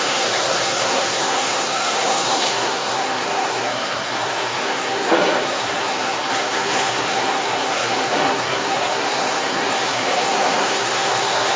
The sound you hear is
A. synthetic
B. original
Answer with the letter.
A